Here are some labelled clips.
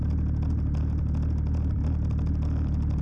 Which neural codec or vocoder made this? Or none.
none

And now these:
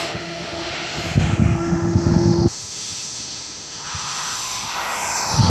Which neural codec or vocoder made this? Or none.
autoencoder, DAC-VAE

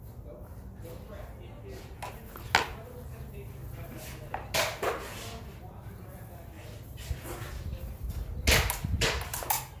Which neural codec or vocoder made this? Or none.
none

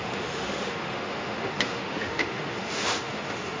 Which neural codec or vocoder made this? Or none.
autoencoder, DAC-VAE